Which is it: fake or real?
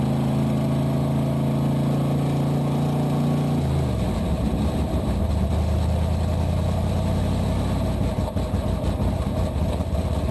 real